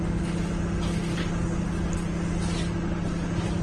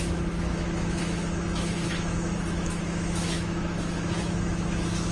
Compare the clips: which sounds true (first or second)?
first